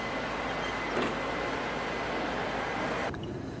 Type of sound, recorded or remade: recorded